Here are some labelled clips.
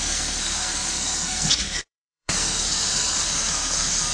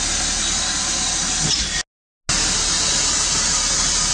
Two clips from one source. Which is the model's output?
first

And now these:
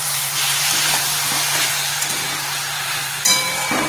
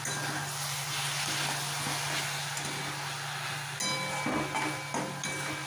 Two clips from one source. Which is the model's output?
first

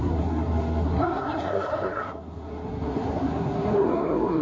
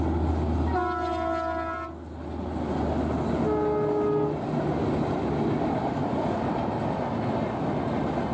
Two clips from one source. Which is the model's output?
first